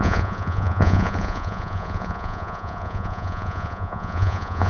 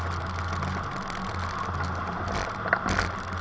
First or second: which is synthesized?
first